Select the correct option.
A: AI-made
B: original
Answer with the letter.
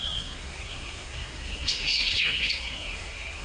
A